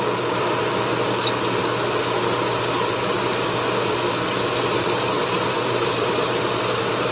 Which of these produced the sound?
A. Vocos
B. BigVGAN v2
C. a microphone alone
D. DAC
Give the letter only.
C